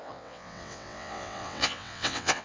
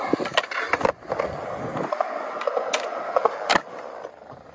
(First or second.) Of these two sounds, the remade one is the first